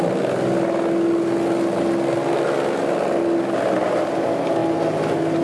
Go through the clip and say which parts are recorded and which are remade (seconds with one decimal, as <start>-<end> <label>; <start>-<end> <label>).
0.0-5.4 recorded

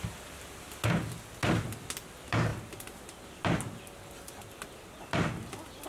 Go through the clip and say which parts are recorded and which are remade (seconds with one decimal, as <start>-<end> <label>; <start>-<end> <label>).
0.0-5.9 recorded

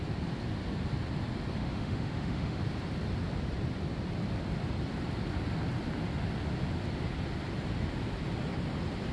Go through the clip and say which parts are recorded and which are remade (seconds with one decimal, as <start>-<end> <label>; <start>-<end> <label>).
0.0-1.6 recorded; 1.6-2.6 remade; 2.6-9.1 recorded

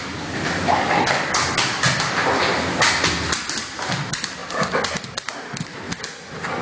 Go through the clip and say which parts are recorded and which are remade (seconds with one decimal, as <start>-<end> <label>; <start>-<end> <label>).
0.0-6.6 recorded

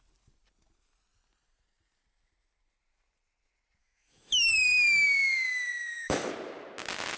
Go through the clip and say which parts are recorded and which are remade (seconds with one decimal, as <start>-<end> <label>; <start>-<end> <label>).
0.0-3.8 recorded; 3.8-6.3 remade; 6.3-7.2 recorded

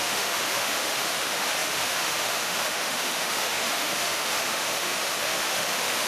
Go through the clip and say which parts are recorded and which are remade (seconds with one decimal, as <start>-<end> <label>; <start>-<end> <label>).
0.0-6.1 remade

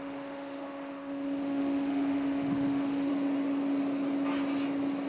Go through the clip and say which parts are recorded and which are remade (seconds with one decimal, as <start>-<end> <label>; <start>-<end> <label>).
0.0-3.1 remade; 3.1-5.1 recorded

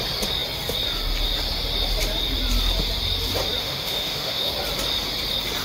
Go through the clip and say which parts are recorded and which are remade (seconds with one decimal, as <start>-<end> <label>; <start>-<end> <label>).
0.0-3.6 recorded; 3.6-4.5 remade; 4.5-5.6 recorded